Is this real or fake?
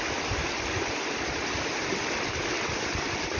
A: real